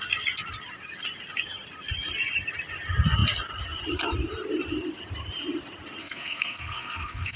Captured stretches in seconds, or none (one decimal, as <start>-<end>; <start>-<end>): 0.0-6.0